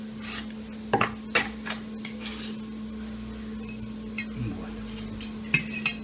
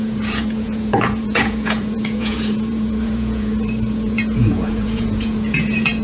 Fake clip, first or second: second